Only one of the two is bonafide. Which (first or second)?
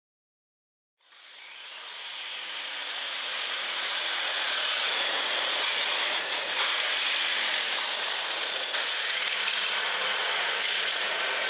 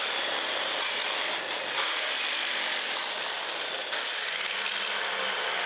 second